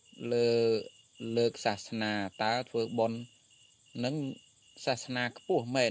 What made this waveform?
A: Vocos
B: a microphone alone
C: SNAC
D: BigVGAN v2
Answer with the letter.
B